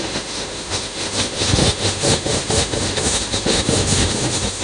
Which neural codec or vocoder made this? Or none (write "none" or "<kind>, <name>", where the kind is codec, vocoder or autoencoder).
autoencoder, DAC-VAE